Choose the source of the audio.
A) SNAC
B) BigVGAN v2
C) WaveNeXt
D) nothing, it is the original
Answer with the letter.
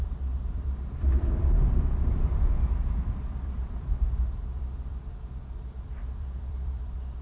B